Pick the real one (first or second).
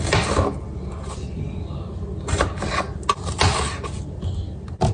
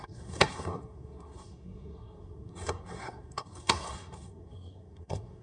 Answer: first